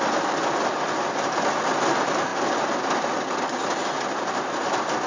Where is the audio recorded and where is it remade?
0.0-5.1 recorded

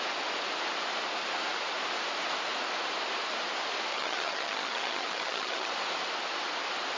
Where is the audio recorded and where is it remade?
0.0-3.9 recorded; 3.9-5.7 remade; 5.7-7.0 recorded

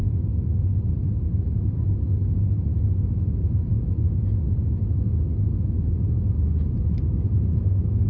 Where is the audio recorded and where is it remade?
0.0-1.2 remade; 1.2-8.1 recorded

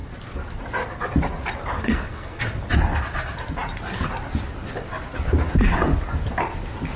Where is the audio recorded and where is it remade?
0.0-1.8 recorded; 1.8-2.4 remade; 2.4-7.0 recorded

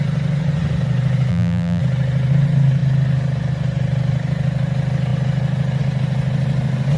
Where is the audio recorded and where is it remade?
0.0-1.3 recorded; 1.3-1.8 remade; 1.8-7.0 recorded

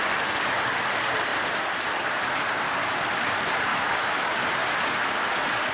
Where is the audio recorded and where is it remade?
0.0-3.7 recorded; 3.7-4.4 remade; 4.4-5.7 recorded

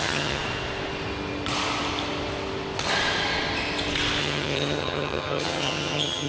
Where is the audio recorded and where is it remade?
0.0-0.4 remade; 0.4-4.2 recorded; 4.2-6.3 remade

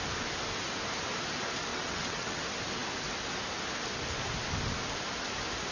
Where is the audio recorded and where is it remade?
0.0-1.7 recorded; 1.7-2.4 remade; 2.4-5.7 recorded